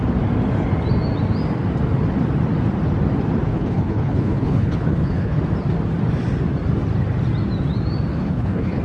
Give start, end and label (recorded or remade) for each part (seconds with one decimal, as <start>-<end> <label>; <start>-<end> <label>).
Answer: 0.0-3.5 recorded; 3.5-5.4 remade; 5.4-8.1 recorded; 8.1-8.8 remade